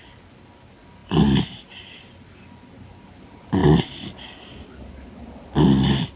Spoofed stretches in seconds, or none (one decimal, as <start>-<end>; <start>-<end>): 1.0-2.0